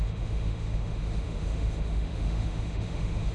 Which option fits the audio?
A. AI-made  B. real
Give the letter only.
A